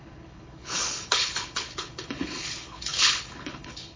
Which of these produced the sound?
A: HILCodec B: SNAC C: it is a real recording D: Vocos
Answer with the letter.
A